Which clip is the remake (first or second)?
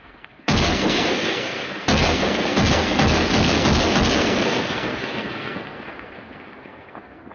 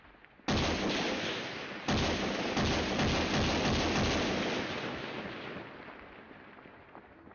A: first